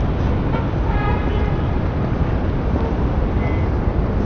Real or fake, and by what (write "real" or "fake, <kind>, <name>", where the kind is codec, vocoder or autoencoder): real